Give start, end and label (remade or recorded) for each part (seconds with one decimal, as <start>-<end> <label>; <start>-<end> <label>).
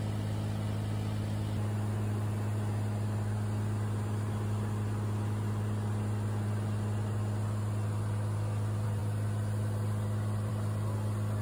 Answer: 0.0-11.4 recorded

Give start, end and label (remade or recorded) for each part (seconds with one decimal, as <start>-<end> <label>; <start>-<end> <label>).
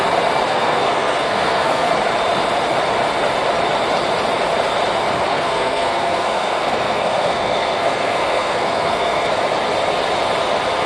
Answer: 0.0-0.5 recorded; 0.5-1.9 remade; 1.9-5.3 recorded; 5.3-9.4 remade; 9.4-10.9 recorded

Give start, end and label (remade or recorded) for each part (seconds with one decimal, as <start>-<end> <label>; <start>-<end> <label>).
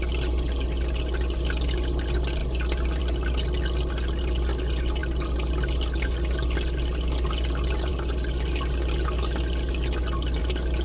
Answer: 0.0-10.8 recorded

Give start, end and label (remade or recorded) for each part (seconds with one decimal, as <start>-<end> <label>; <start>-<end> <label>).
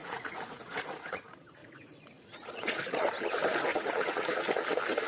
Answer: 0.0-1.2 remade; 1.2-1.6 recorded; 1.6-2.8 remade; 2.8-3.7 recorded; 3.7-4.4 remade; 4.4-5.1 recorded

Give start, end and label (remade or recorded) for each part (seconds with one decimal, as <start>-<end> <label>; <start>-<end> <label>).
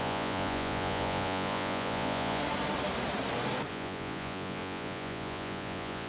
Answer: 0.0-2.4 remade; 2.4-3.7 recorded; 3.7-6.1 remade